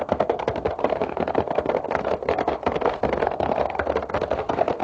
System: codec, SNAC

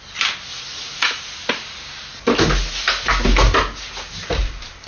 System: none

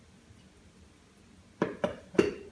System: none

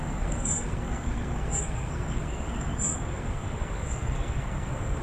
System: codec, SNAC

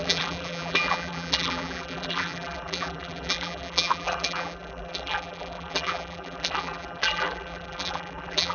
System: vocoder, BigVGAN v2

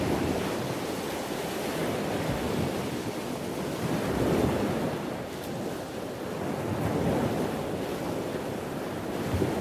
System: none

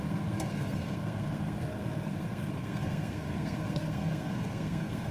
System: codec, SNAC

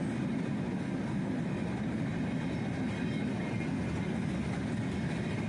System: none